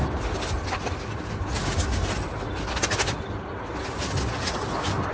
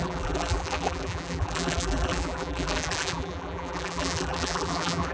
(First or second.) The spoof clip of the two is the second